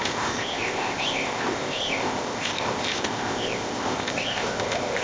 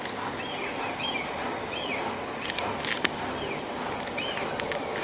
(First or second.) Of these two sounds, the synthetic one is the first